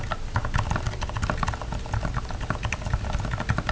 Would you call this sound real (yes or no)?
yes